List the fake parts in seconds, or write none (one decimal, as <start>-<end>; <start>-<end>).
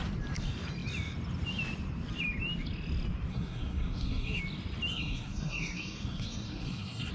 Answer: 3.3-4.4; 4.9-7.1